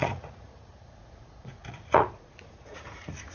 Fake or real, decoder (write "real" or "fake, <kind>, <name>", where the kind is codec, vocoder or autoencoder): fake, vocoder, Vocos